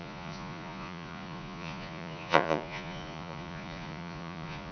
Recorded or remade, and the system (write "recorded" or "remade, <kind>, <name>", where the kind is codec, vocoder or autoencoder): remade, vocoder, Vocos